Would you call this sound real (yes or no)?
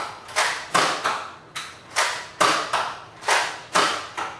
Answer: yes